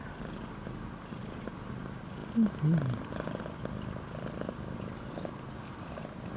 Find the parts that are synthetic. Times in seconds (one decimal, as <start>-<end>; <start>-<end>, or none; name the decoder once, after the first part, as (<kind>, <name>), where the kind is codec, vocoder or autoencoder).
none